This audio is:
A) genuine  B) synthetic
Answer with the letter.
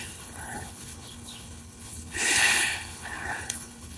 B